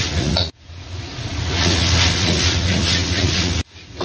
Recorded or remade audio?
remade